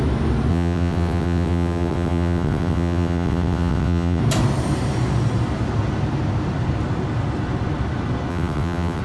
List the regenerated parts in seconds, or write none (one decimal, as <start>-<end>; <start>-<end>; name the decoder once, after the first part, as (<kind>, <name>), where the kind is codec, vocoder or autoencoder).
0.5-4.2 (vocoder, WaveNeXt); 8.3-9.0